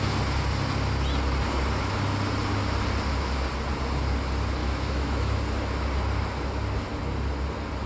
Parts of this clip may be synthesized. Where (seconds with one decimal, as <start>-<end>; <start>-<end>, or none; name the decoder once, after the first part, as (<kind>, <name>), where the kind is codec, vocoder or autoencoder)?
4.6-5.4 (autoencoder, DAC-VAE)